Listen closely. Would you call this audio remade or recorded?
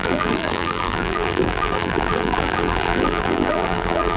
remade